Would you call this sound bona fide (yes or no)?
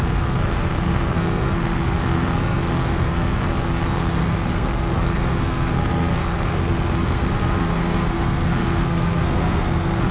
no